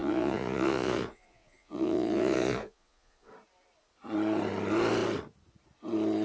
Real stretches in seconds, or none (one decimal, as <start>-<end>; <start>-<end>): 3.3-6.2